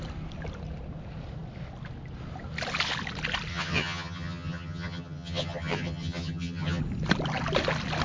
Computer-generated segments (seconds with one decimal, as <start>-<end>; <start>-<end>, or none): 3.5-6.8